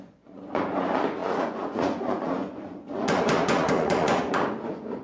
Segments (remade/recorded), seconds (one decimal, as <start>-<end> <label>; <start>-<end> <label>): 0.0-5.0 remade